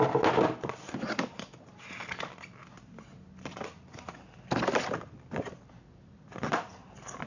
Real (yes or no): yes